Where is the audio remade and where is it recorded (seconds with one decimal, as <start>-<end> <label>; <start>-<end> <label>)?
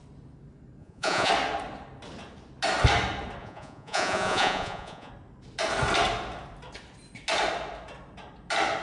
0.0-0.8 recorded; 0.8-1.3 remade; 1.3-3.4 recorded; 3.4-5.1 remade; 5.1-8.8 recorded